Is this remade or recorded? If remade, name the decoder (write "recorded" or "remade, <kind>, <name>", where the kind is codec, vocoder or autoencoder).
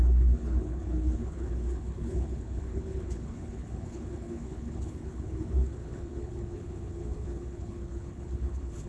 remade, codec, HILCodec